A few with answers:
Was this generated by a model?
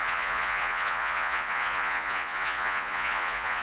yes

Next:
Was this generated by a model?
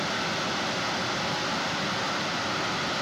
no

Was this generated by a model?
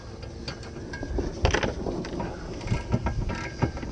no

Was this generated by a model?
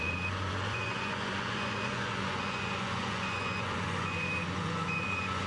yes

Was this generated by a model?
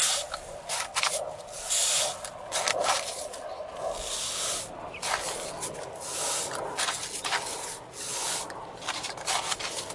no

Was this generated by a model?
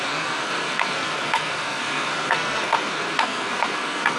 yes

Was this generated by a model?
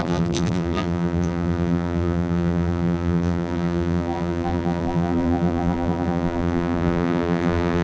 yes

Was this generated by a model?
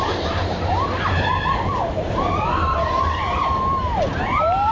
no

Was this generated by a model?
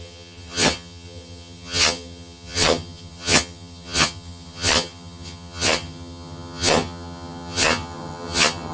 yes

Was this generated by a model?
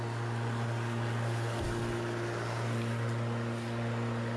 no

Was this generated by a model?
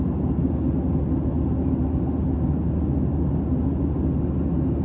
no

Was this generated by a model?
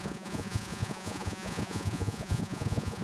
yes